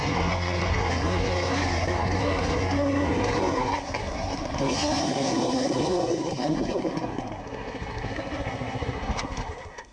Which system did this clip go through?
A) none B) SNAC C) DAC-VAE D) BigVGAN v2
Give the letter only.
B